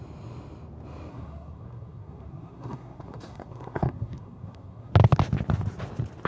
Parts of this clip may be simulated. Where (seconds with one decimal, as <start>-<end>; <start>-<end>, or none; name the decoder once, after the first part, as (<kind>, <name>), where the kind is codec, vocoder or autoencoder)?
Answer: 1.1-4.9 (codec, SNAC)